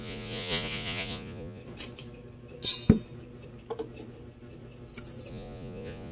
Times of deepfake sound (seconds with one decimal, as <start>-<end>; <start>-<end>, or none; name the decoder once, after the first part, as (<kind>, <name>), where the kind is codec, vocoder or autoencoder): 0.0-1.6 (vocoder, Vocos); 5.3-6.1